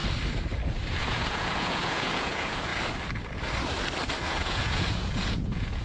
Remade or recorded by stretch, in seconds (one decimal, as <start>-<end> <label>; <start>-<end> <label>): 0.0-1.0 recorded; 1.0-2.7 remade; 2.7-4.2 recorded; 4.2-5.8 remade